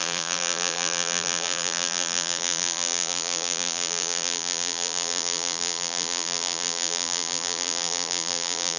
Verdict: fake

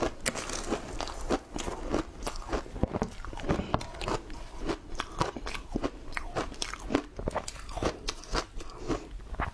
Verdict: real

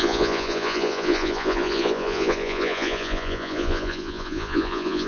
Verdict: fake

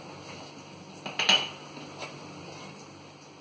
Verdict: real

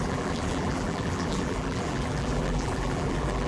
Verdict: fake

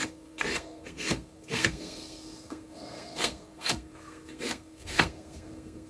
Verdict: fake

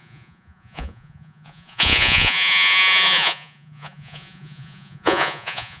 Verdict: fake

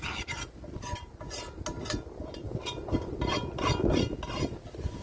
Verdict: real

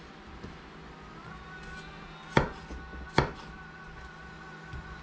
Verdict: real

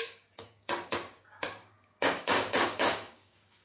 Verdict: fake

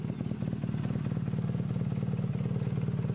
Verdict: real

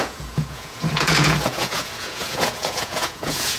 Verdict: fake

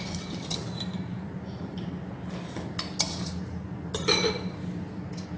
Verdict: real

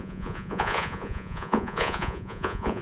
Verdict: fake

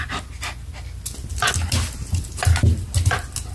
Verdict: real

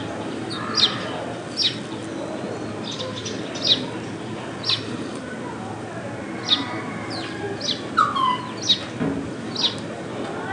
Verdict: real